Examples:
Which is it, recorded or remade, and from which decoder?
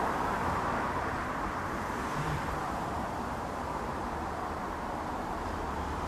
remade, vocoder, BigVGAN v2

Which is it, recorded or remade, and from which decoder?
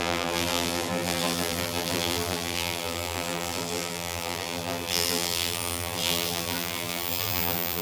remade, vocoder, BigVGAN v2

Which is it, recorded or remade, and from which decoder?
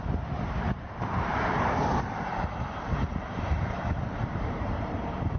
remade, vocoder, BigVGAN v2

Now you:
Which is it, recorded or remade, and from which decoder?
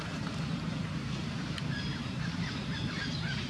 remade, vocoder, BigVGAN v2